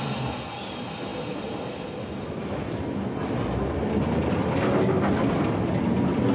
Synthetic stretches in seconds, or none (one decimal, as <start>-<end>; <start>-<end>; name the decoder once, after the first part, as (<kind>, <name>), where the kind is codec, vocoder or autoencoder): none